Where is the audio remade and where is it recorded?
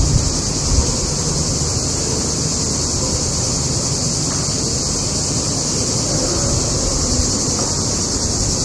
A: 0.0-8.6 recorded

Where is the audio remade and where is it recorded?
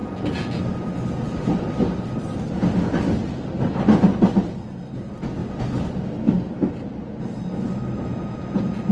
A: 0.0-0.6 remade; 0.6-8.1 recorded; 8.1-8.9 remade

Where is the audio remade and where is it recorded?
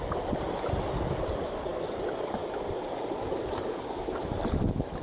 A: 0.0-5.0 recorded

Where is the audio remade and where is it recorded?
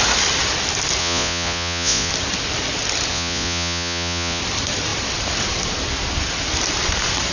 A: 0.0-1.0 recorded; 1.0-2.1 remade; 2.1-3.1 recorded; 3.1-4.4 remade; 4.4-7.3 recorded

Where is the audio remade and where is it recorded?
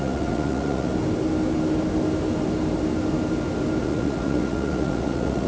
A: 0.0-0.9 remade; 0.9-3.8 recorded; 3.8-5.5 remade